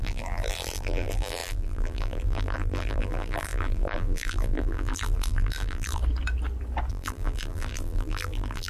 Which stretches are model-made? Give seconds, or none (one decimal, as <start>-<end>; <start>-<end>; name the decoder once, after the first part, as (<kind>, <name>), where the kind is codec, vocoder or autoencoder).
0.0-6.0 (vocoder, BigVGAN v2); 6.9-8.7